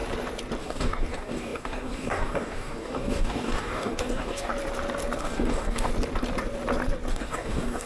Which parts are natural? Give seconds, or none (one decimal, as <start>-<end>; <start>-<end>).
0.0-0.6; 4.5-5.2; 5.9-7.1